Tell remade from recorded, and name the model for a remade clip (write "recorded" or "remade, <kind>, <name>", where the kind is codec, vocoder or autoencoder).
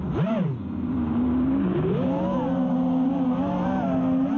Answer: recorded